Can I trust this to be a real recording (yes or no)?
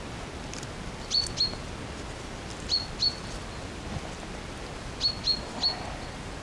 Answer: yes